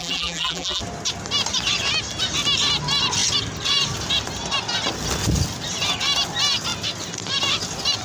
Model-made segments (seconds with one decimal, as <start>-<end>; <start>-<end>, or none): 0.0-0.8